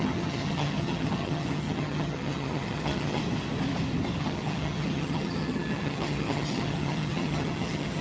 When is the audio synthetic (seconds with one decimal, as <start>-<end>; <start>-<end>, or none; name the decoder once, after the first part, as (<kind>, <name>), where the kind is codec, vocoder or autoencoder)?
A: 0.0-3.2 (vocoder, HiFi-GAN); 4.2-8.0